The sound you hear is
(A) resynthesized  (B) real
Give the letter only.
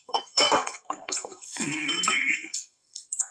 A